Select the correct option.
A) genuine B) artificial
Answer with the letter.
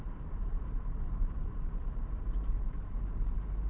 A